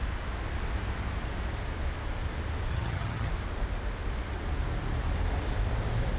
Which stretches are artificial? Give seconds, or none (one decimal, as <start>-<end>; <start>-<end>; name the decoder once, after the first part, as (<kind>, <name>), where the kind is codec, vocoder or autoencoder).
2.7-3.3 (vocoder, HiFi-GAN)